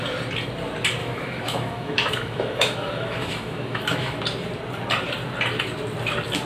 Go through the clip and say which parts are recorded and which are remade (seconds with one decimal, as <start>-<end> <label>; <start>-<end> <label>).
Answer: 0.0-1.0 recorded; 1.0-4.2 remade; 4.2-6.5 recorded